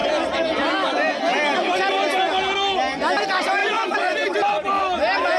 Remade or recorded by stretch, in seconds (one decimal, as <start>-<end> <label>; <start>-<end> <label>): 0.0-5.4 recorded